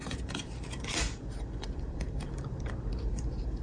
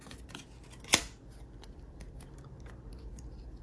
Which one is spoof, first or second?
first